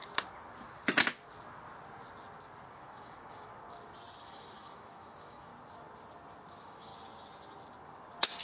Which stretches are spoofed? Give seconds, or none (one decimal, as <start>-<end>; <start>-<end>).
2.7-3.5; 4.2-5.5; 6.5-6.9